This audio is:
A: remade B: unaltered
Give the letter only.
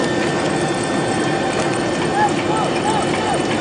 B